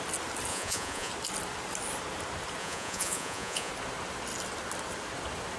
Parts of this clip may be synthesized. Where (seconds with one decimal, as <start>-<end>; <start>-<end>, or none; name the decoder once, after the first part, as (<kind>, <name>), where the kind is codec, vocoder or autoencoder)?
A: 0.5-1.1 (vocoder, Vocos); 2.6-3.7